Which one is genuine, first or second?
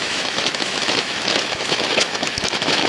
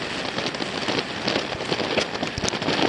second